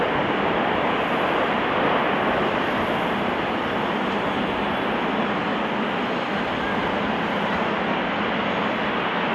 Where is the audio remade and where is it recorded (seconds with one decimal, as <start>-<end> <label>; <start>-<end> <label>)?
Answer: 0.0-9.3 recorded